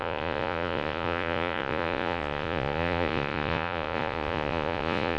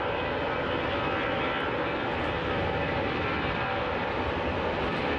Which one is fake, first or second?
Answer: first